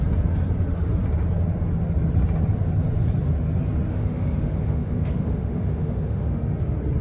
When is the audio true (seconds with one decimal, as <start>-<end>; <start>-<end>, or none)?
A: 0.0-3.9; 6.6-7.0